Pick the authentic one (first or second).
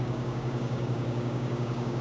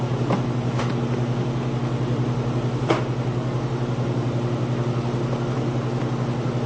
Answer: second